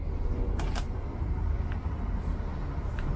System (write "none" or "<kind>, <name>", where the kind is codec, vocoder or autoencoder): none